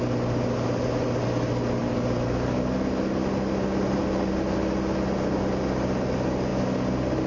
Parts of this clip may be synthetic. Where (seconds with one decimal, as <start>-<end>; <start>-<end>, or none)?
none